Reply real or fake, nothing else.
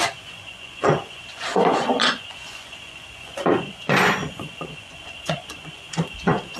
fake